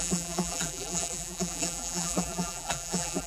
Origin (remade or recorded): remade